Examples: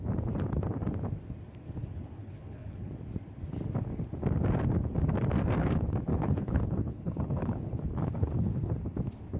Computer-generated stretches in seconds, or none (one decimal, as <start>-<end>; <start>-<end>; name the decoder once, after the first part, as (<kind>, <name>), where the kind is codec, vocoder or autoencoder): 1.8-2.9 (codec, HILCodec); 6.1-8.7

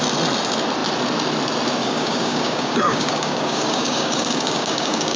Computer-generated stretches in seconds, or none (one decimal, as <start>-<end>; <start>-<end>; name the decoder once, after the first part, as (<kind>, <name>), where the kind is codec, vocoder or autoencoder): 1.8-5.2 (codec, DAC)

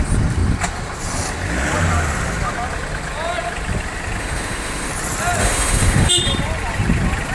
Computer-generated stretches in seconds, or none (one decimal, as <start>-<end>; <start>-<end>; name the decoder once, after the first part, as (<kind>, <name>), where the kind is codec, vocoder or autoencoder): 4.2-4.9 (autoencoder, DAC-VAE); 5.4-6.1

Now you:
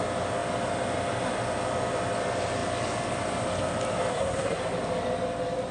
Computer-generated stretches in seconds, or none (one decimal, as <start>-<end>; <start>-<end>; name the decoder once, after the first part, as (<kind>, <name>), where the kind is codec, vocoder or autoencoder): 4.1-4.6 (codec, SNAC)

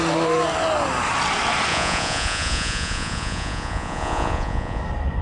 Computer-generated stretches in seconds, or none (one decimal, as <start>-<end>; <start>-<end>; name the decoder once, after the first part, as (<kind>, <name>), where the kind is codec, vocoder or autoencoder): 1.7-4.8 (vocoder, Vocos)